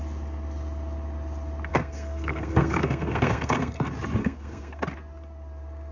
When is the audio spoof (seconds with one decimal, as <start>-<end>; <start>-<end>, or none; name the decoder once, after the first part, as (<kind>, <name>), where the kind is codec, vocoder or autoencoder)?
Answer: 1.7-3.8 (codec, SNAC); 4.2-4.8